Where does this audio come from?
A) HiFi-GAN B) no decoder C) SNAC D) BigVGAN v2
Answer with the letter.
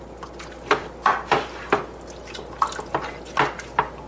B